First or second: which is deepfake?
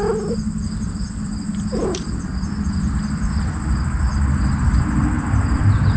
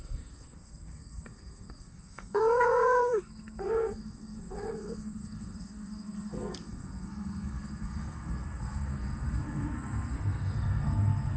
second